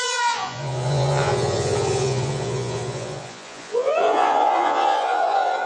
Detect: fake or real fake